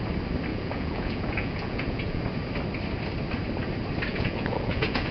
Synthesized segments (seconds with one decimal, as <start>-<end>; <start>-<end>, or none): 0.5-2.2; 4.1-5.1